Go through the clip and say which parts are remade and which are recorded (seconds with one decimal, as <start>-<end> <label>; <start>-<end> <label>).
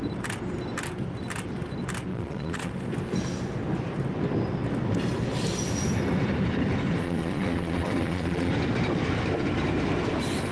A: 0.0-2.1 recorded; 2.1-2.7 remade; 2.7-7.0 recorded; 7.0-8.5 remade; 8.5-10.5 recorded